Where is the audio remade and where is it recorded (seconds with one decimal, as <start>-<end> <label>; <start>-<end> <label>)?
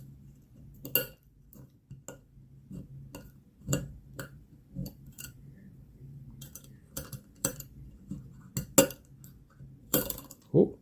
0.0-0.8 remade; 0.8-3.6 recorded; 3.6-8.5 remade; 8.5-9.8 recorded; 9.8-10.8 remade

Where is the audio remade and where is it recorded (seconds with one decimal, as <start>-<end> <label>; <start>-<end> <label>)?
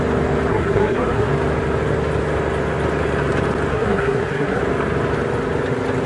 0.0-0.5 recorded; 0.5-1.3 remade; 1.3-3.7 recorded; 3.7-4.6 remade; 4.6-6.1 recorded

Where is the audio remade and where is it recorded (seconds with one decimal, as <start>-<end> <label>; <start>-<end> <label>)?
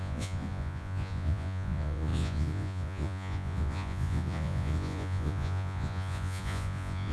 0.0-7.1 remade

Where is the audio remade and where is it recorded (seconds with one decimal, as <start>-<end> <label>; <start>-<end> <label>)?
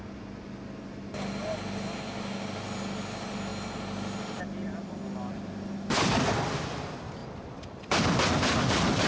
0.0-9.1 recorded